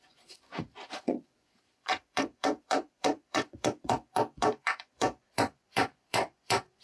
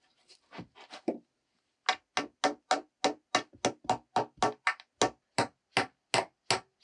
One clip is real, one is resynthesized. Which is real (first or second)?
second